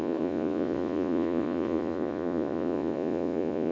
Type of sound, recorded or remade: remade